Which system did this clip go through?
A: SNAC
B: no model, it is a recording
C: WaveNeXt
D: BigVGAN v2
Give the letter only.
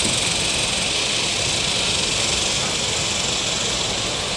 B